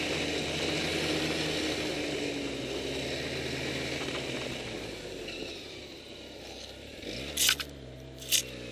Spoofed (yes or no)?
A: no